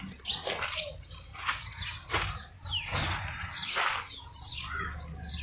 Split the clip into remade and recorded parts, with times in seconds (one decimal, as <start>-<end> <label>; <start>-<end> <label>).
0.0-5.4 recorded